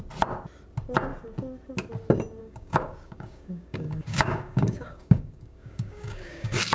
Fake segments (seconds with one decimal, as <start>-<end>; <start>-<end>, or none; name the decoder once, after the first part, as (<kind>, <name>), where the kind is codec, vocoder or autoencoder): 2.4-6.7 (codec, DAC)